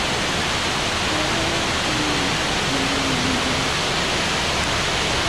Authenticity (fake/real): real